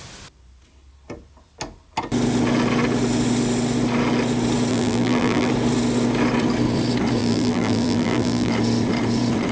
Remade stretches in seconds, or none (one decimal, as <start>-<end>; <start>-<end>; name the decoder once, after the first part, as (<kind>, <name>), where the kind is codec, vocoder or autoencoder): 4.7-5.5 (vocoder, BigVGAN v2); 7.2-8.5